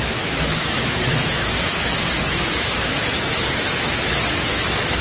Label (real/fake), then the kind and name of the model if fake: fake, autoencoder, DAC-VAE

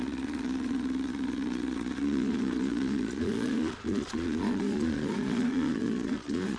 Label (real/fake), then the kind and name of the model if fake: fake, vocoder, Vocos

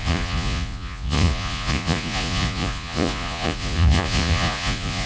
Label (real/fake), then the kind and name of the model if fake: fake, vocoder, Vocos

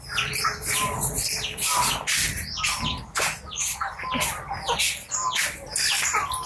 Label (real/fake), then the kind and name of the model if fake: real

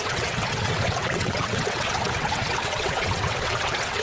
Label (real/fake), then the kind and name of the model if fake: fake, vocoder, WaveNeXt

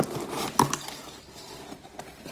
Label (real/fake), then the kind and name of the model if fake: real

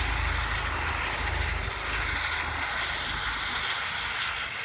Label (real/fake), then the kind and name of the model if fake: real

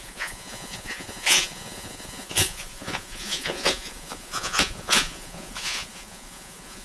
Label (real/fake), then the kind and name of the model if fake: fake, vocoder, Vocos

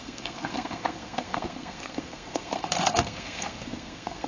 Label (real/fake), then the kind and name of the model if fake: fake, codec, SNAC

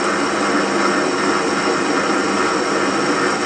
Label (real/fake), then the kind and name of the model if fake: real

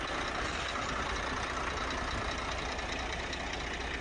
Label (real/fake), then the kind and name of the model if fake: real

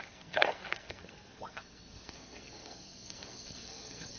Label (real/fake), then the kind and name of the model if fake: fake, codec, SNAC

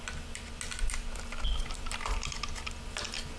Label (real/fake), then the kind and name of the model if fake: real